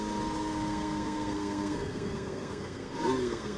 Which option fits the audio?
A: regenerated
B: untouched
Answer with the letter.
A